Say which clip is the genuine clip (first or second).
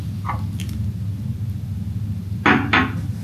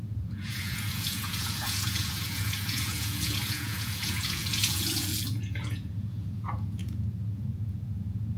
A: first